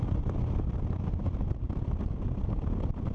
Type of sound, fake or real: real